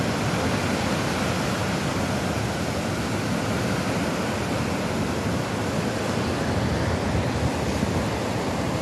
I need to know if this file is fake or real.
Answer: real